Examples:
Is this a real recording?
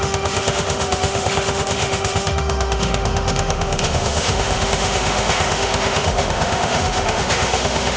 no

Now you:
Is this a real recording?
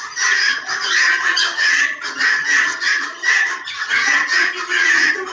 no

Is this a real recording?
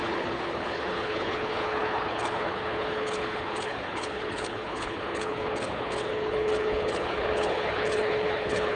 no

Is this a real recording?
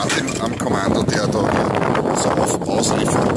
yes